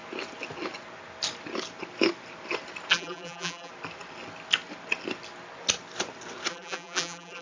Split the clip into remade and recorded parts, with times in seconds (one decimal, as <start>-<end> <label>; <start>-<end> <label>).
0.0-2.9 recorded; 2.9-3.7 remade; 3.7-6.5 recorded; 6.5-7.4 remade